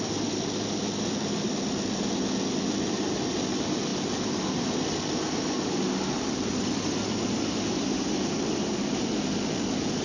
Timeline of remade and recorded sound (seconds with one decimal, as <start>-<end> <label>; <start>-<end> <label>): 0.0-10.0 recorded